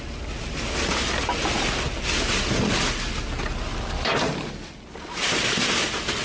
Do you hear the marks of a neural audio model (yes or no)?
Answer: no